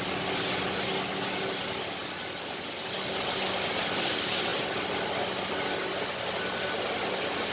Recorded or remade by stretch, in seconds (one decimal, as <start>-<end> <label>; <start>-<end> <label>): 0.0-7.5 recorded